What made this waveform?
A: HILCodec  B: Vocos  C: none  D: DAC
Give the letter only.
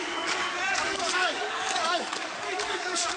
D